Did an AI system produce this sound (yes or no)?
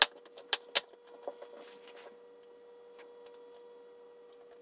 no